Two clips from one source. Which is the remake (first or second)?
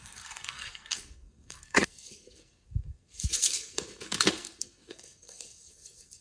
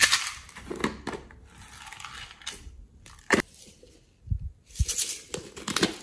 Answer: first